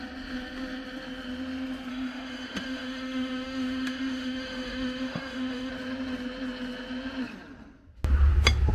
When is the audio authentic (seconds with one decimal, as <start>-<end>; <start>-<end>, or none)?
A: 0.0-1.9; 5.7-8.7